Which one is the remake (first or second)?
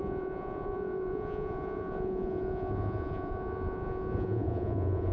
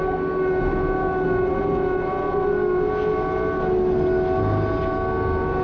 first